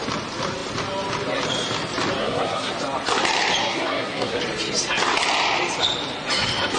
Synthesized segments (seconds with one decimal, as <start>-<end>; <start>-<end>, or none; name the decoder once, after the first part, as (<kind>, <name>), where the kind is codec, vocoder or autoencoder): 2.2-2.7 (codec, SNAC); 3.6-4.4